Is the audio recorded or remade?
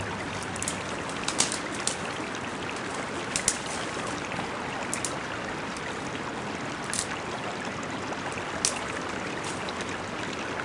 recorded